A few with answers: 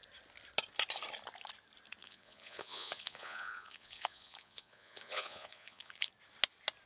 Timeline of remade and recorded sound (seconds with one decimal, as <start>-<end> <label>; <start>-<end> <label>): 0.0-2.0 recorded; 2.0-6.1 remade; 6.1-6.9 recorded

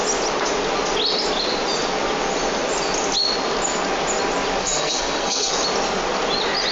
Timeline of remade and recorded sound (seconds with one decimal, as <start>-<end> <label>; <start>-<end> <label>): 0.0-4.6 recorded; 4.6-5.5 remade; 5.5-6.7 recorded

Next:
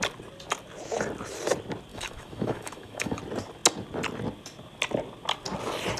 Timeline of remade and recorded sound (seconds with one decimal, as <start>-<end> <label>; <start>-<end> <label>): 0.0-1.9 recorded; 1.9-3.2 remade; 3.2-6.0 recorded